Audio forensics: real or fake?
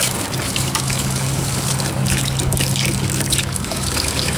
fake